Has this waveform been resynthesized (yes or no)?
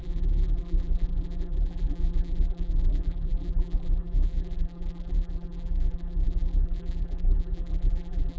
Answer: yes